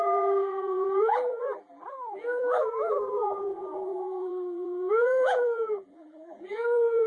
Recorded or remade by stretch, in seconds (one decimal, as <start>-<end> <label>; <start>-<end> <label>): 0.0-7.1 remade